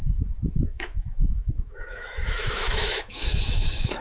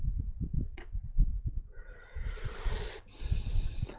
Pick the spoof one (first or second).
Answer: first